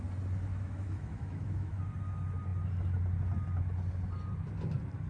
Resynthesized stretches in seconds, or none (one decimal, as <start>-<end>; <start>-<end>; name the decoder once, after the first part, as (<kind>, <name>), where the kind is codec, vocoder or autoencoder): 0.5-1.8 (autoencoder, DAC-VAE)